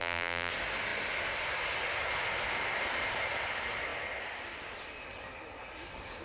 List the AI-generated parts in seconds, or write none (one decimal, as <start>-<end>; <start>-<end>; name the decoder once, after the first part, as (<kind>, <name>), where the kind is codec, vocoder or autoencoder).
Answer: 0.0-0.5 (vocoder, BigVGAN v2)